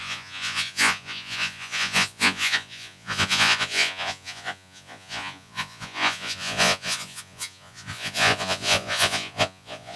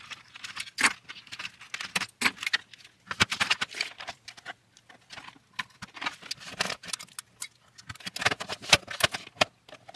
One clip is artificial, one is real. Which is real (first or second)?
second